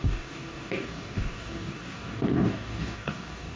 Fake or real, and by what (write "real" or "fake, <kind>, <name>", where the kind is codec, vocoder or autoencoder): fake, codec, DAC